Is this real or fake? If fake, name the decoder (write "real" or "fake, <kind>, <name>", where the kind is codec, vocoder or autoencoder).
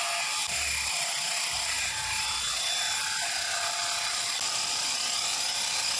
real